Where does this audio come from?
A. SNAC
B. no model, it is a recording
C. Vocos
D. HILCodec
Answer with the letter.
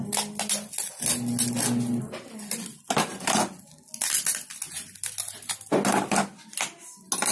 B